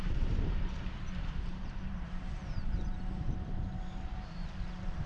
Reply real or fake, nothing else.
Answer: fake